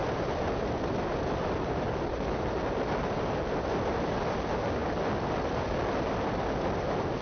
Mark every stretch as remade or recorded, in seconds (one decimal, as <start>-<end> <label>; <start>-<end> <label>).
0.0-7.2 recorded